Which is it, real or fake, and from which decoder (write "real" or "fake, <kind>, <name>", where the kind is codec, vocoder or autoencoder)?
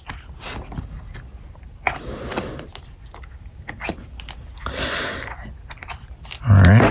real